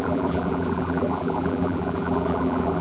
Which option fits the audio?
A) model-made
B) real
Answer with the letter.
A